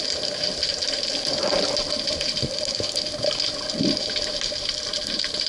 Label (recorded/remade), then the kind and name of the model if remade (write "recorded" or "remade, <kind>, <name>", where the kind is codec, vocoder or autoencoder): recorded